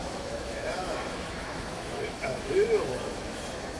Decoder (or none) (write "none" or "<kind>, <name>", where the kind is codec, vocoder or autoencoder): autoencoder, DAC-VAE